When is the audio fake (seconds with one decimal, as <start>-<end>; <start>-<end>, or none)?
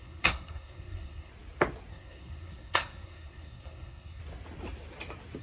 0.0-1.3; 1.9-4.2